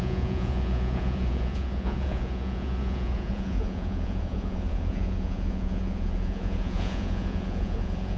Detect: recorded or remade remade